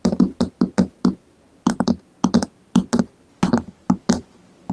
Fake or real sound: real